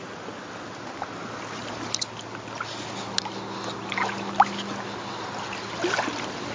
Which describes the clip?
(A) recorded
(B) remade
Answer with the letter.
A